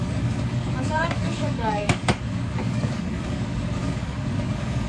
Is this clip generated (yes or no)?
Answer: yes